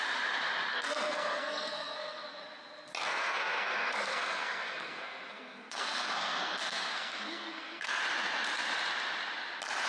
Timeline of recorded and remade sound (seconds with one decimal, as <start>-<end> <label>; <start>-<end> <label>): 0.0-0.7 recorded; 0.7-2.4 remade; 2.4-3.0 recorded; 3.0-8.0 remade; 8.0-9.9 recorded